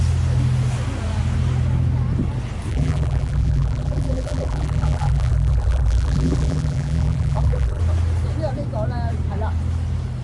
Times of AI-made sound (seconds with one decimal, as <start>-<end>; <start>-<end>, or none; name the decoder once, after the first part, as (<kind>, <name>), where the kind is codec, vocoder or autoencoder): 2.7-7.8 (vocoder, BigVGAN v2)

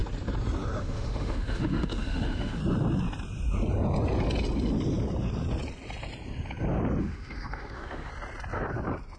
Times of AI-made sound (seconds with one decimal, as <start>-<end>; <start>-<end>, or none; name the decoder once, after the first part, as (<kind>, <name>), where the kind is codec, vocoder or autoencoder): 0.8-2.6 (autoencoder, DAC-VAE); 7.0-8.1

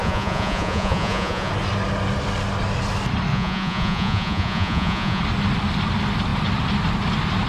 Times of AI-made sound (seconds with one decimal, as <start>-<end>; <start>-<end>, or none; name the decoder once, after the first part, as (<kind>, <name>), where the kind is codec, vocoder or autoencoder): 0.0-1.5 (vocoder, Vocos); 3.3-5.2

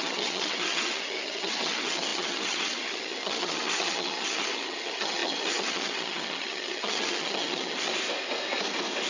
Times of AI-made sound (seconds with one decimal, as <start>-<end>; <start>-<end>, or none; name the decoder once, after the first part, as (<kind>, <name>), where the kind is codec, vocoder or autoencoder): 0.0-7.9 (vocoder, HiFi-GAN)

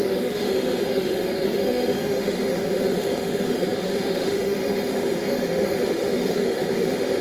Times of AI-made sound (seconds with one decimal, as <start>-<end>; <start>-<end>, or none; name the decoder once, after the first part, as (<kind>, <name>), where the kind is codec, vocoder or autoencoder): 0.0-7.2 (autoencoder, DAC-VAE)